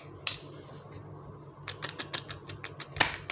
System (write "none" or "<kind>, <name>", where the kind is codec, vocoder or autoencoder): none